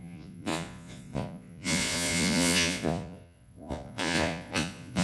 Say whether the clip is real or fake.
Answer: fake